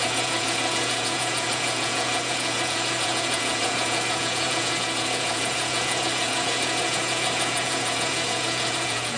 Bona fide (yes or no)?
no